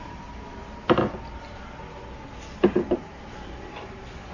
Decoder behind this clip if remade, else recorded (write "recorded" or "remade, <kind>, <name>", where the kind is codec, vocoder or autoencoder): recorded